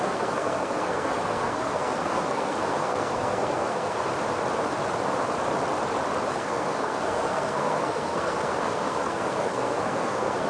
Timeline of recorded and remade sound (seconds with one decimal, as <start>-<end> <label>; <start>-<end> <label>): 0.0-4.1 remade; 4.1-6.3 recorded; 6.3-10.5 remade